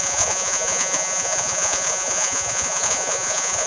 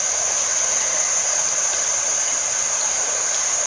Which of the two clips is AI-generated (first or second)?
first